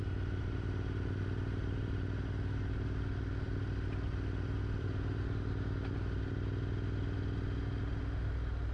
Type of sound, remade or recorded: recorded